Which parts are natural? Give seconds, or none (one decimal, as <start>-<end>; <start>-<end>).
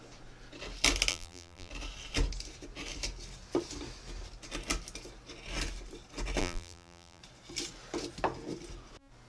0.0-1.1; 1.7-6.4; 7.2-9.3